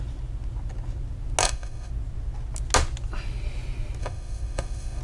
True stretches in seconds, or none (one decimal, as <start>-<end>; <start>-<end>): 0.0-1.4; 1.9-4.0